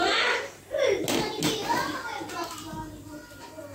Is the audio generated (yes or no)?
no